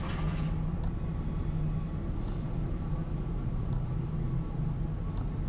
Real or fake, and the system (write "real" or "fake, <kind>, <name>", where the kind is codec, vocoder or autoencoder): real